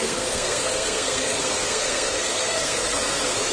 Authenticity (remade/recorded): remade